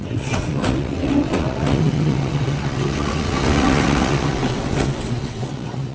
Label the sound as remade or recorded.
remade